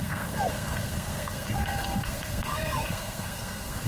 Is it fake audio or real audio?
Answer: fake